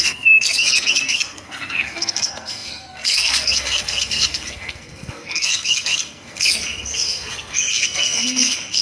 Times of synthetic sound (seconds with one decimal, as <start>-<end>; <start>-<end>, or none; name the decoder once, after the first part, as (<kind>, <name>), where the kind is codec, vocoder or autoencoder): 0.0-8.8 (codec, SNAC)